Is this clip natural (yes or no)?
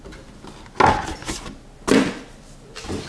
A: yes